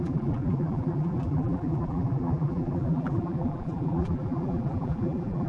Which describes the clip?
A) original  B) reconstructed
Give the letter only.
B